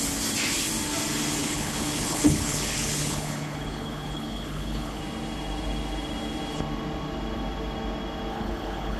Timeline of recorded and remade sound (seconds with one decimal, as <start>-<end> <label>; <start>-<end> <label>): 0.0-1.4 recorded; 1.4-5.0 remade; 5.0-8.3 recorded; 8.3-9.0 remade